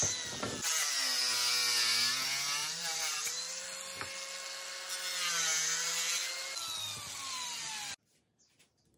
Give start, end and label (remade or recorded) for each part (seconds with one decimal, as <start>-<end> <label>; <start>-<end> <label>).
0.0-2.6 recorded; 2.6-3.6 remade; 3.6-9.0 recorded